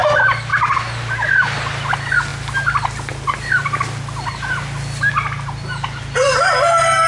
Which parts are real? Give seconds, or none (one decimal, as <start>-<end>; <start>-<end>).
0.0-7.1